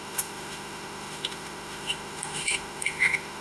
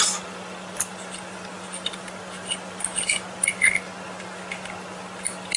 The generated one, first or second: first